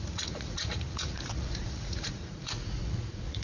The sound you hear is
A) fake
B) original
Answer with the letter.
A